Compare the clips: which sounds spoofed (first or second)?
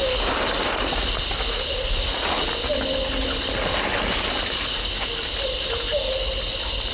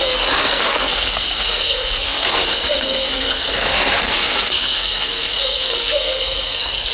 second